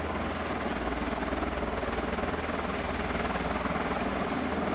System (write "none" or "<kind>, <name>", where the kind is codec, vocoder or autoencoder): none